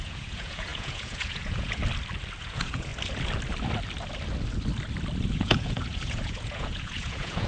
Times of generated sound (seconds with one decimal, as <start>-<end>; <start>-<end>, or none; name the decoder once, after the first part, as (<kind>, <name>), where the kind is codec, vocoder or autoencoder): 0.0-1.8 (vocoder, Vocos); 2.4-2.9; 5.3-7.5